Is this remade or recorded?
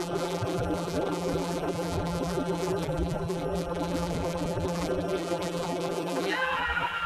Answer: remade